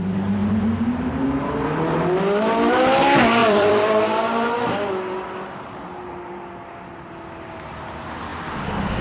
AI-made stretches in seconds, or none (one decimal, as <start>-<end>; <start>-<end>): 3.4-4.5